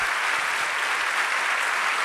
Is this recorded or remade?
recorded